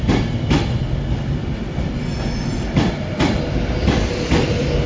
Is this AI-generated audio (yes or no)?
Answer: no